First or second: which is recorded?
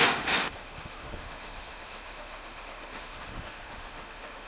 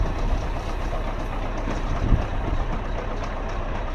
second